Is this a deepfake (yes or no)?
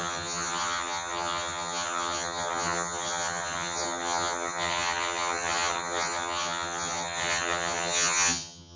yes